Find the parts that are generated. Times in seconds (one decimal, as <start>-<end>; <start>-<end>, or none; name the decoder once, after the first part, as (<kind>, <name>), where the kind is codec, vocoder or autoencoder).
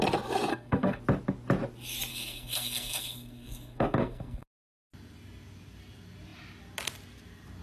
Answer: 0.5-1.0 (codec, SNAC); 2.1-4.8